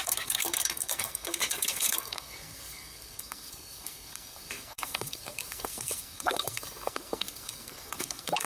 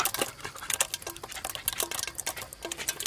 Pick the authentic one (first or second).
second